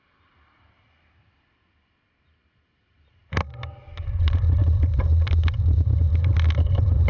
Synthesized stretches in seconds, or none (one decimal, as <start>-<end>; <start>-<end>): none